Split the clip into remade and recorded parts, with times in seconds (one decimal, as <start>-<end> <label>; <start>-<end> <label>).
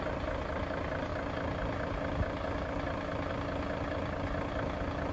0.0-5.1 recorded